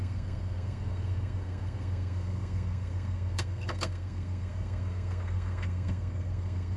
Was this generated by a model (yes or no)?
yes